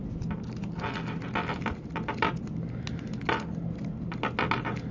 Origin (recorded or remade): recorded